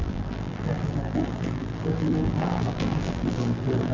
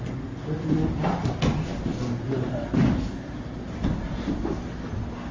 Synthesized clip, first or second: first